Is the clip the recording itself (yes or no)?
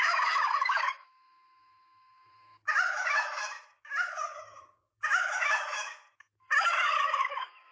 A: no